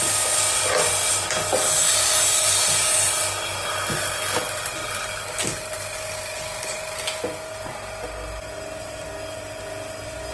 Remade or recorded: recorded